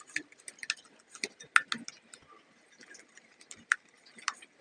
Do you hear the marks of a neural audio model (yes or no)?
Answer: no